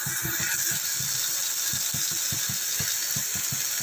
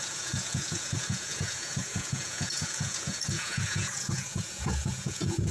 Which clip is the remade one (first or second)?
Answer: second